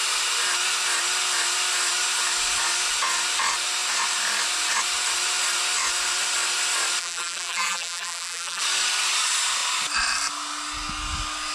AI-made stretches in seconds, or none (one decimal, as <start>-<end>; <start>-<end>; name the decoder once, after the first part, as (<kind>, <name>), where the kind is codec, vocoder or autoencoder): 7.0-8.6 (vocoder, BigVGAN v2)